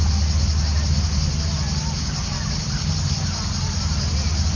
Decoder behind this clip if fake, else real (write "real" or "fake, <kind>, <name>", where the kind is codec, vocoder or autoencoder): real